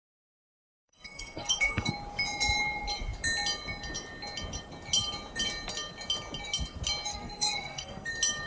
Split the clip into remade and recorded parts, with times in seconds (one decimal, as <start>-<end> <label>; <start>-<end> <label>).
0.0-0.7 recorded; 0.7-1.9 remade; 1.9-7.1 recorded; 7.1-8.1 remade; 8.1-8.5 recorded